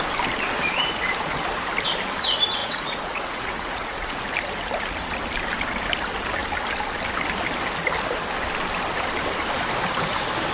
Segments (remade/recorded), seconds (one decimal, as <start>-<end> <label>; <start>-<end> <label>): 0.0-2.6 recorded; 2.6-4.2 remade; 4.2-10.5 recorded